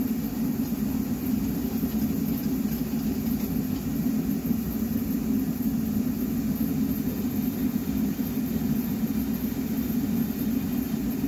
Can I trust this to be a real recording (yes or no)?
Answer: yes